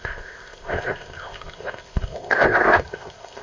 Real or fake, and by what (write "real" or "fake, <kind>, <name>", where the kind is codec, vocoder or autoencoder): fake, codec, ZipCodec